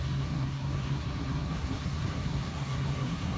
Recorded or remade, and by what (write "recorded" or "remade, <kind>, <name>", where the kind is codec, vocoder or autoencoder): remade, codec, SNAC